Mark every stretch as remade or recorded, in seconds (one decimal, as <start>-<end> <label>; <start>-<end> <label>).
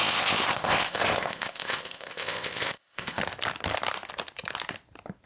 0.0-3.2 remade; 3.2-5.3 recorded